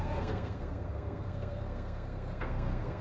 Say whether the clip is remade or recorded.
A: remade